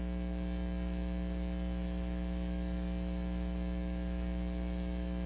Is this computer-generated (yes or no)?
yes